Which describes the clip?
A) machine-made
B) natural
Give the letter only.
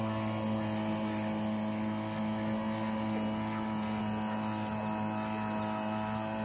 B